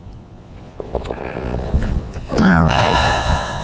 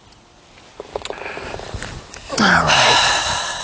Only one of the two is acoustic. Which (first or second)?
second